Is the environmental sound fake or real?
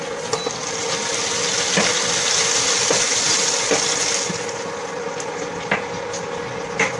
real